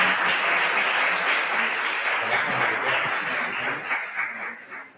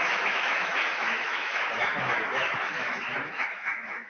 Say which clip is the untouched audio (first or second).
first